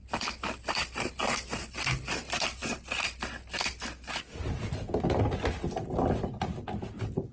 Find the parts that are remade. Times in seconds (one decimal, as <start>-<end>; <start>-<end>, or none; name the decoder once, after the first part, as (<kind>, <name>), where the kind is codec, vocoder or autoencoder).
none